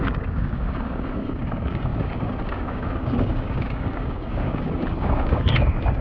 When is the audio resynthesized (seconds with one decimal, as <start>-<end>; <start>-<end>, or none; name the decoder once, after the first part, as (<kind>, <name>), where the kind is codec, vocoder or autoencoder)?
0.0-6.0 (codec, DAC)